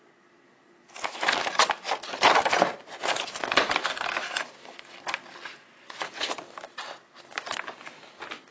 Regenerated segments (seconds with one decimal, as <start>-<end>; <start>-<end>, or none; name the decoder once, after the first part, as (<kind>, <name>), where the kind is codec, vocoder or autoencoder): 5.5-6.1 (vocoder, Vocos)